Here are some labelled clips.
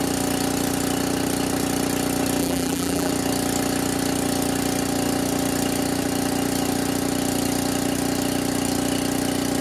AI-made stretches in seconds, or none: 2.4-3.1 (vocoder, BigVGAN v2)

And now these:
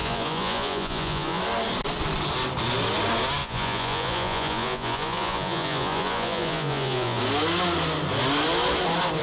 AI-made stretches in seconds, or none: 0.0-1.4 (vocoder, Vocos); 3.4-7.2

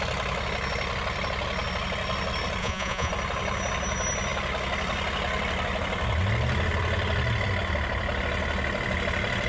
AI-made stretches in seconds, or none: 2.6-3.1 (vocoder, Vocos)

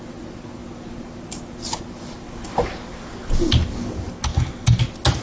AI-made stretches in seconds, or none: 4.3-4.8 (codec, DAC)

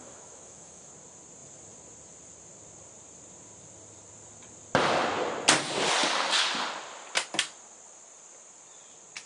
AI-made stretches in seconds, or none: 0.0-0.9 (autoencoder, DAC-VAE)

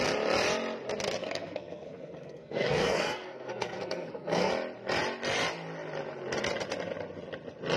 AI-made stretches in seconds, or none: 1.2-4.5 (codec, SNAC)

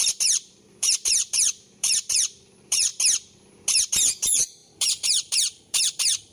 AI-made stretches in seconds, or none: 0.0-2.9 (vocoder, BigVGAN v2); 3.9-6.3